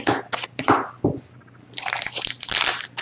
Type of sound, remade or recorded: recorded